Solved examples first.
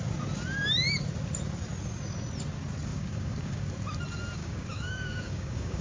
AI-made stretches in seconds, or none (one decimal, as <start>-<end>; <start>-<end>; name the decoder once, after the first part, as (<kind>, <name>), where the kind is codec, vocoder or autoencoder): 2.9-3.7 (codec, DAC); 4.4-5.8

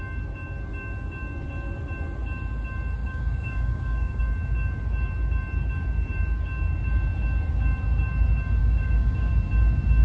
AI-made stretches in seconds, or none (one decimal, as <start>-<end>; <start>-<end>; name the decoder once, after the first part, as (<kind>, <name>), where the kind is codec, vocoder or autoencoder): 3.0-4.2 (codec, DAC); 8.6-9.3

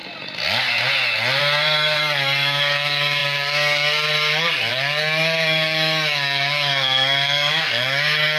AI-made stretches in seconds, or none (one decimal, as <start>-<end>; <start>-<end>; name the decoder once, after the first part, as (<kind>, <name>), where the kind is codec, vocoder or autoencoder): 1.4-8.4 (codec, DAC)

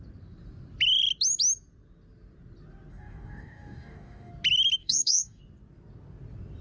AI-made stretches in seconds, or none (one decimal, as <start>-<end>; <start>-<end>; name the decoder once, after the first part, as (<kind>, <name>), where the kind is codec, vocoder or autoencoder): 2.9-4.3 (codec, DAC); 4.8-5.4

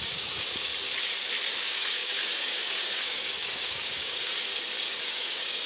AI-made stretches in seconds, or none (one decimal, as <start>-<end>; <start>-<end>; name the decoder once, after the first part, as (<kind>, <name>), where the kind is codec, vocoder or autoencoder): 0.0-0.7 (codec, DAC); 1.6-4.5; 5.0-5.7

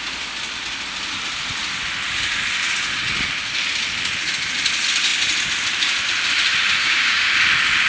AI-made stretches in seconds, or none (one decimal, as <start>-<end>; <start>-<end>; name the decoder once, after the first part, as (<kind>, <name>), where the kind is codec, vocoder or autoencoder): 6.8-7.3 (codec, DAC)